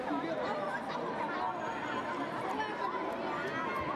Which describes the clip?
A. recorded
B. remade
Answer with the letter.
A